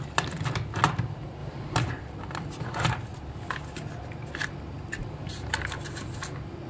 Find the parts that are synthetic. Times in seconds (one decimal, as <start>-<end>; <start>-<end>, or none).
1.4-1.9; 5.0-5.5